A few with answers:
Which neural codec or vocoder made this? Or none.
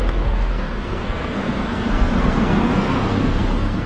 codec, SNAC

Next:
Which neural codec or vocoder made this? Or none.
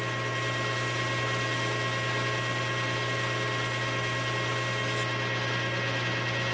none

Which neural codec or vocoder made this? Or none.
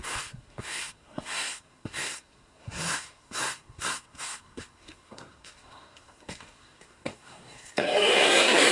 codec, SNAC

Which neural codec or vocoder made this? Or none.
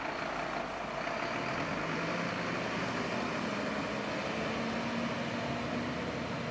none